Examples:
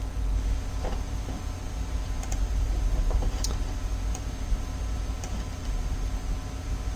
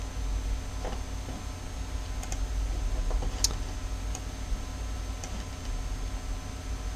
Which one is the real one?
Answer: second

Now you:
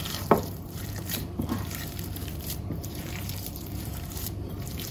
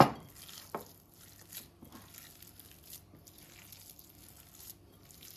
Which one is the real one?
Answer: second